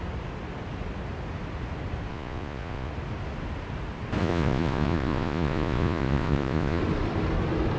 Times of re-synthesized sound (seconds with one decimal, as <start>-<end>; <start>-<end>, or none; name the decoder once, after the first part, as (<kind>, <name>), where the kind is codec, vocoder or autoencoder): 2.1-2.9 (vocoder, Vocos); 4.2-6.8